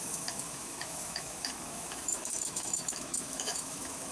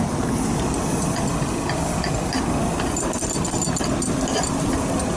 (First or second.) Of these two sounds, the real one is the second